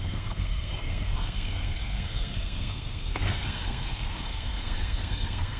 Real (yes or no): no